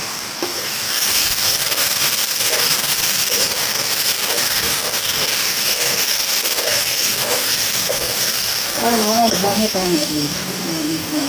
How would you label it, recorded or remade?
remade